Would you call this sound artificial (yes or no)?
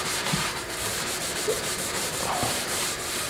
yes